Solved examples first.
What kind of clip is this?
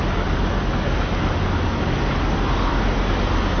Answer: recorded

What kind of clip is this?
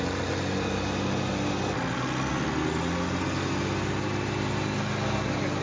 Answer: recorded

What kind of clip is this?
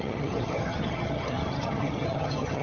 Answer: remade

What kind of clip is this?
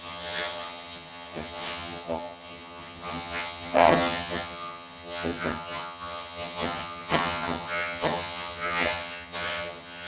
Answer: remade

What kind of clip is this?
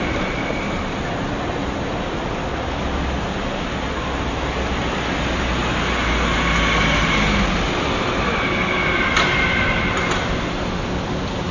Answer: recorded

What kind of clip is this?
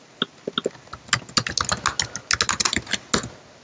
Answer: recorded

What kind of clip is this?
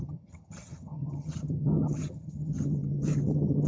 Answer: remade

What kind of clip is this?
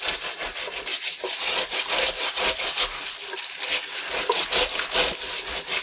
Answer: recorded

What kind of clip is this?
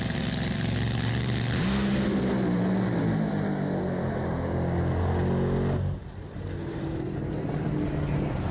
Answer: recorded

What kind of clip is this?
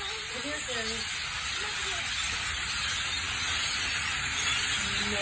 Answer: recorded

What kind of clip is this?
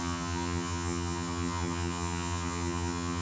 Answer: remade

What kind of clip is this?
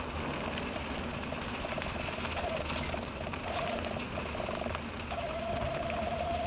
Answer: recorded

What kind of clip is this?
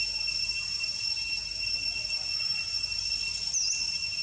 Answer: recorded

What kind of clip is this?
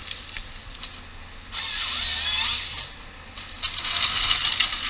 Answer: recorded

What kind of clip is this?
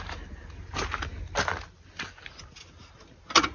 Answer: recorded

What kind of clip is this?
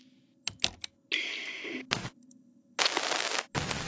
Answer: recorded